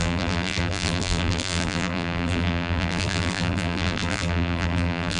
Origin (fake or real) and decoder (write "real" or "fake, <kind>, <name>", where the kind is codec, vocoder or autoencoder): fake, vocoder, BigVGAN v2